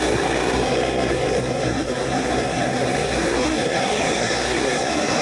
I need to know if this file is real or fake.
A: fake